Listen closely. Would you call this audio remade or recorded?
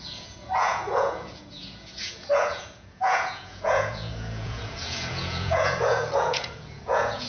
remade